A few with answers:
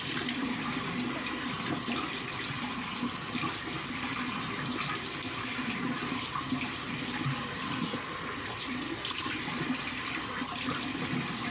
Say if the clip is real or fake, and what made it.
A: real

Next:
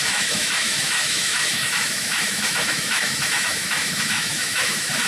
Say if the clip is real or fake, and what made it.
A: fake, autoencoder, DAC-VAE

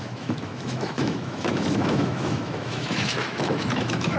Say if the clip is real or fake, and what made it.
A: fake, autoencoder, DAC-VAE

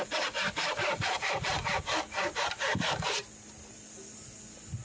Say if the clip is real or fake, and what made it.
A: real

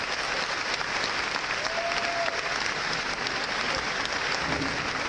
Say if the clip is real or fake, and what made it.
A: real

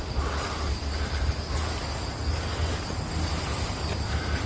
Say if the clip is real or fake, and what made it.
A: real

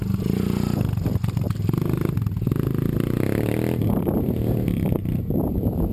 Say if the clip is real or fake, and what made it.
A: real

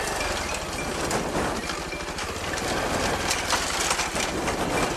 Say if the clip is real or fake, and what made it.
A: real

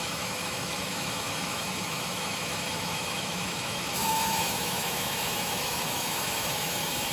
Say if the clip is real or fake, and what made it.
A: fake, autoencoder, DAC-VAE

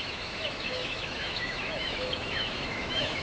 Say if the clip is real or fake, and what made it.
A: fake, autoencoder, DAC-VAE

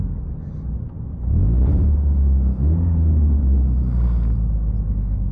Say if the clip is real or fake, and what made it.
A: real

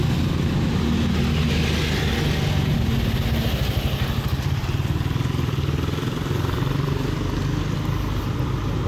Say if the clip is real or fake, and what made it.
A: real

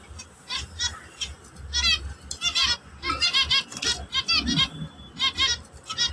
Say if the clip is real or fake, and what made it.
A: real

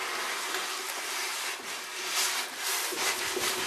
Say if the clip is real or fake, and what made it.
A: real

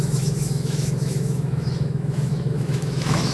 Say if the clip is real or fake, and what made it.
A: fake, autoencoder, DAC-VAE